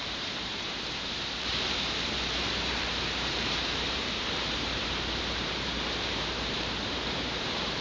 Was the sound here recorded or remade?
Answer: remade